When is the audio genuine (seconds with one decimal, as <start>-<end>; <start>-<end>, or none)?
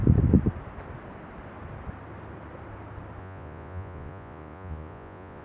0.0-3.2